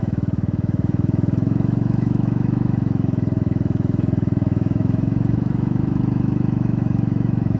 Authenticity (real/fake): fake